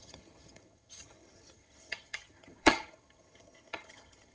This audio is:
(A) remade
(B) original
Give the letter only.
A